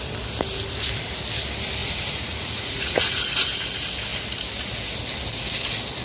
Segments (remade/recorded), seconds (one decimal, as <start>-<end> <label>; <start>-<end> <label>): 0.0-1.8 recorded; 1.8-3.3 remade; 3.3-6.0 recorded

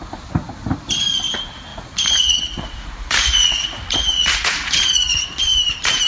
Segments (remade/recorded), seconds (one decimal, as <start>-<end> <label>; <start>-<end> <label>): 0.0-1.7 recorded; 1.7-5.4 remade; 5.4-6.1 recorded

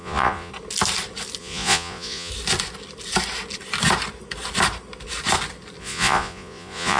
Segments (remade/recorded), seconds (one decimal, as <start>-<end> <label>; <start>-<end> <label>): 0.0-0.5 remade; 0.5-1.4 recorded; 1.4-2.3 remade; 2.3-5.8 recorded; 5.8-7.0 remade

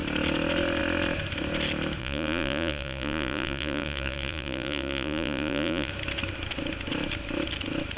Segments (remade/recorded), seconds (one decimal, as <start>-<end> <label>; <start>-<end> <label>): 0.0-2.0 recorded; 2.0-5.9 remade; 5.9-8.0 recorded

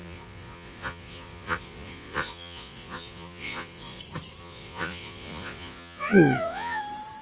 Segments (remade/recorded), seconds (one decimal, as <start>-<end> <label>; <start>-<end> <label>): 0.0-4.0 remade; 4.0-4.4 recorded; 4.4-6.8 remade; 6.8-7.2 recorded

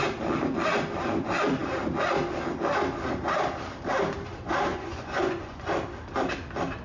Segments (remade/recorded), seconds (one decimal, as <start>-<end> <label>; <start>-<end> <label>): 0.0-4.7 recorded; 4.7-5.7 remade; 5.7-6.8 recorded

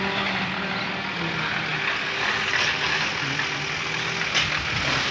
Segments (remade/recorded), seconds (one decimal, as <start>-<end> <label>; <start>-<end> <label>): 0.0-5.1 recorded